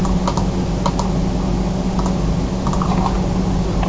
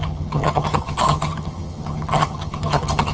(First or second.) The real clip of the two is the first